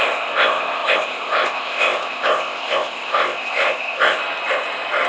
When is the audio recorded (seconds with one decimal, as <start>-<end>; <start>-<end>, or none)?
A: 4.2-5.1